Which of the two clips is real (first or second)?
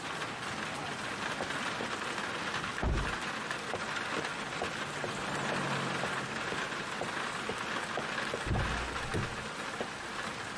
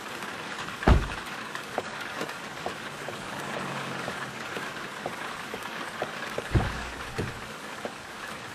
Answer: first